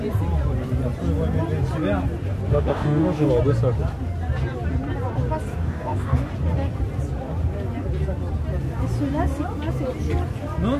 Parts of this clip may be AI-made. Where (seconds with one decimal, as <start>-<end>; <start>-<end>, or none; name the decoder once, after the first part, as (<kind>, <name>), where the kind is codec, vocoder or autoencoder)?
2.5-3.3 (codec, DAC); 5.5-6.3